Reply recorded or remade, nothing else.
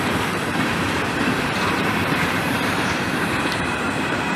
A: remade